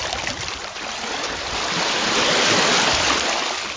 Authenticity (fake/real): real